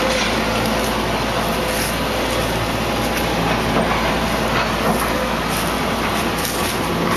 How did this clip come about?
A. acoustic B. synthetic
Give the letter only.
A